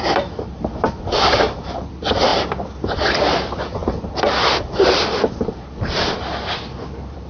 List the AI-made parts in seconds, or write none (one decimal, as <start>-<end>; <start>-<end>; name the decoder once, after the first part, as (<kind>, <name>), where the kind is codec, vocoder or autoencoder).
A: 0.0-7.3 (vocoder, BigVGAN v2)